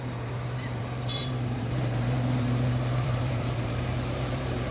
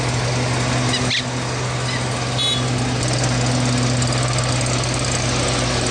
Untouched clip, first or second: second